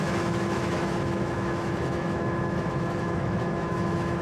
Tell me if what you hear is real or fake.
fake